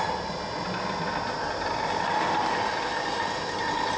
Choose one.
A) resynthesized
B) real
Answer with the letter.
B